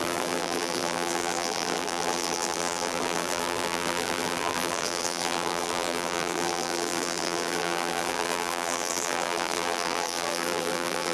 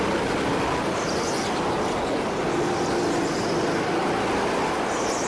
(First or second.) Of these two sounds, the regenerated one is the first